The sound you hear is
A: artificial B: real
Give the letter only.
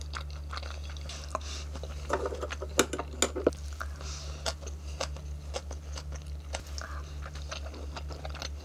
B